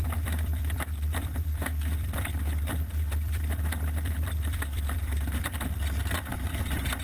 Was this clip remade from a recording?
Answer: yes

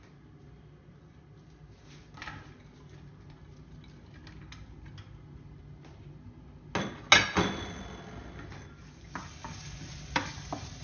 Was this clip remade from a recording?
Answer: no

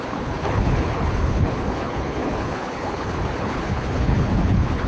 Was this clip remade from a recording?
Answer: yes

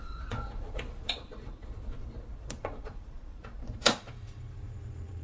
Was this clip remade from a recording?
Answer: yes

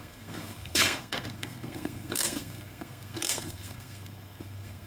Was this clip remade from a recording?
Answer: yes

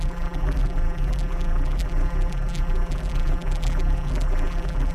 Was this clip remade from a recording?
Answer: yes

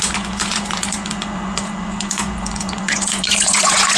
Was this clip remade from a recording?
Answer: yes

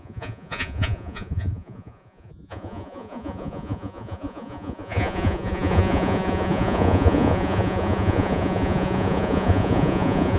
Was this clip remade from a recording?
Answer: yes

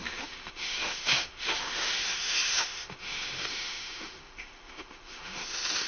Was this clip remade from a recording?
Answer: yes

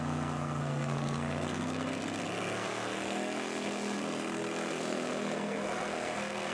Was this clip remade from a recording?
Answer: yes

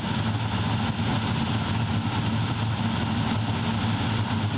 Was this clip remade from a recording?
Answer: no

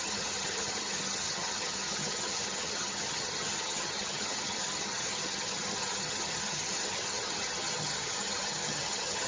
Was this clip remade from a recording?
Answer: yes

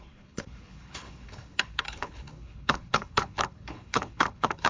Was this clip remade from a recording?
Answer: yes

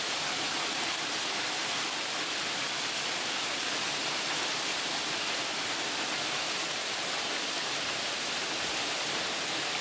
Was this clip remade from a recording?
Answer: no